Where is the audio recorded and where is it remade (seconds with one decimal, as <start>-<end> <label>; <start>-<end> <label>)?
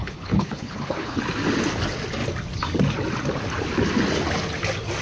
0.0-1.2 remade; 1.2-5.0 recorded